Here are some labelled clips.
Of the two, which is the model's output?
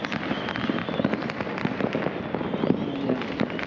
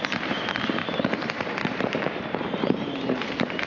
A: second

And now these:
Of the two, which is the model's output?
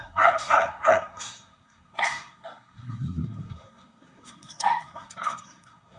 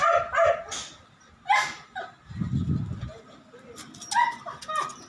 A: first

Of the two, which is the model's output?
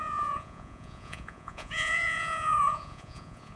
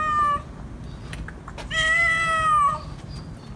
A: first